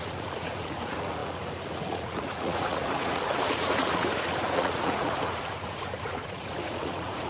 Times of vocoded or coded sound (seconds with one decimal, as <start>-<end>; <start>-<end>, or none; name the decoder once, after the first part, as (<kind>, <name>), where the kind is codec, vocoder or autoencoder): 0.0-7.3 (vocoder, Vocos)